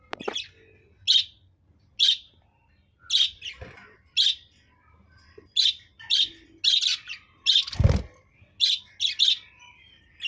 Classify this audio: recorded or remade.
recorded